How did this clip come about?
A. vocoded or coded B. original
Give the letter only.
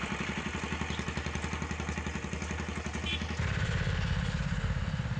B